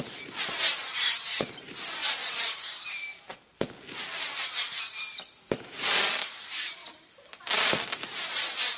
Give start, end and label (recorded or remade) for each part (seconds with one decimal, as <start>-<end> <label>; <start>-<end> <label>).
0.0-8.8 recorded